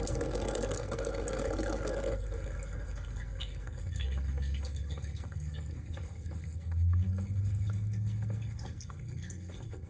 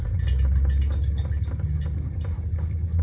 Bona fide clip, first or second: second